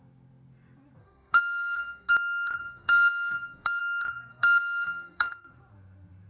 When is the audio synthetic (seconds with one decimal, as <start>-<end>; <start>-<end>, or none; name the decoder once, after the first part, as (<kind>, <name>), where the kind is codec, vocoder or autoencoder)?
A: 1.0-2.1 (codec, SNAC); 2.6-3.8; 4.3-5.4